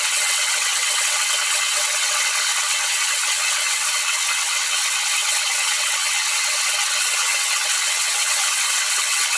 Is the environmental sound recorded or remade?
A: remade